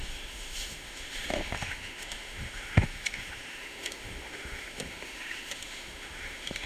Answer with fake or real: fake